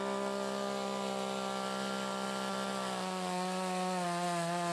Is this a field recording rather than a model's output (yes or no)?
yes